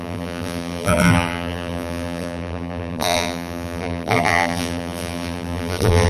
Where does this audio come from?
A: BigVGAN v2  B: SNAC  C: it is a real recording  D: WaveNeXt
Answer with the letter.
A